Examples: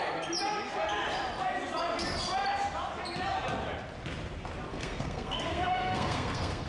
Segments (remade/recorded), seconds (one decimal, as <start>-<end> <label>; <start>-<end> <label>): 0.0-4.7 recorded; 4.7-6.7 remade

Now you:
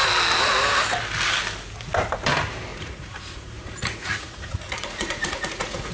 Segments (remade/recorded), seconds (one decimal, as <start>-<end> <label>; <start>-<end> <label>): 0.0-2.7 recorded; 2.7-5.9 remade

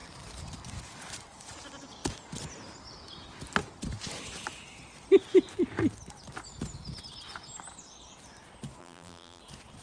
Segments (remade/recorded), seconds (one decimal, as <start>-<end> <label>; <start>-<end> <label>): 0.0-8.8 recorded; 8.8-9.4 remade; 9.4-9.8 recorded

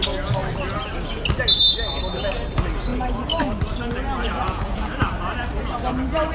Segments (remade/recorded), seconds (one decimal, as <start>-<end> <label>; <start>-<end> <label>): 0.0-4.2 recorded; 4.2-4.9 remade; 4.9-6.3 recorded

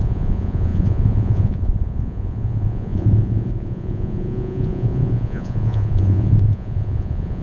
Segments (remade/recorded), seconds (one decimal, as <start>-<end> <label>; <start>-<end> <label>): 0.0-7.4 remade